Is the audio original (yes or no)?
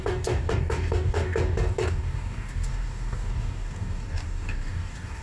no